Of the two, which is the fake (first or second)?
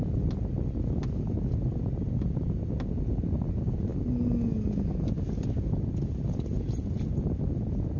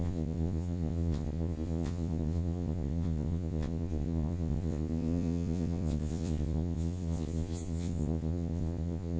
second